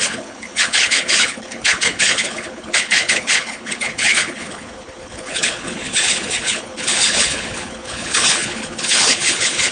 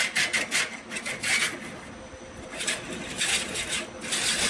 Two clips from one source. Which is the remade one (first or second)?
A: first